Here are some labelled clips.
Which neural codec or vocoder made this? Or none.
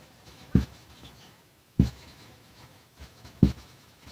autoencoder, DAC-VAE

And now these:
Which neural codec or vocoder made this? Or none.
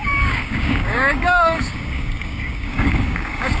codec, DAC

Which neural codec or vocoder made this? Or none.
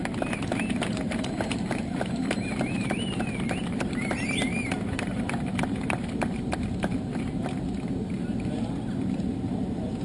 vocoder, BigVGAN v2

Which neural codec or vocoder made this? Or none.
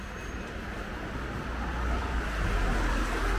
none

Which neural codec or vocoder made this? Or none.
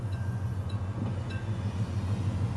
vocoder, Vocos